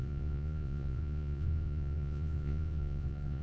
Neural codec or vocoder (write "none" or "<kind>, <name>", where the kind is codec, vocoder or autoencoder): vocoder, Vocos